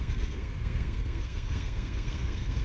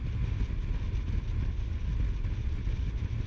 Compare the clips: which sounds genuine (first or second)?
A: second